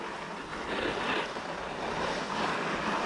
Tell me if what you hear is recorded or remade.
recorded